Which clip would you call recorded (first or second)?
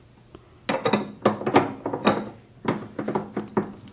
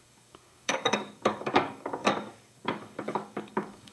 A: first